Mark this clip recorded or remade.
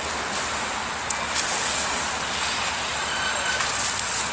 recorded